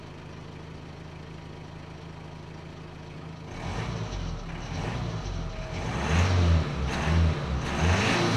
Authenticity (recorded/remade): recorded